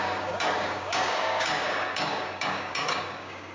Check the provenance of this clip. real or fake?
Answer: fake